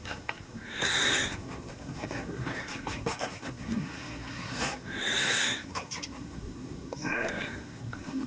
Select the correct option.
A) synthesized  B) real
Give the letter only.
A